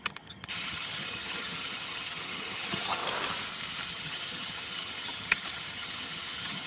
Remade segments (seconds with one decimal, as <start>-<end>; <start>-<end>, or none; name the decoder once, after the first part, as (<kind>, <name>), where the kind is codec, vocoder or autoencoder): 0.0-3.0 (vocoder, HiFi-GAN); 3.9-6.7